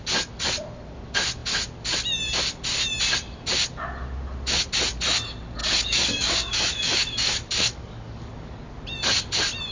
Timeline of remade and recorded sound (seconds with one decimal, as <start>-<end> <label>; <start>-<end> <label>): 0.0-5.6 recorded; 5.6-8.5 remade; 8.5-9.7 recorded